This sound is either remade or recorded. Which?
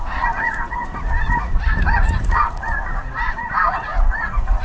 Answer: remade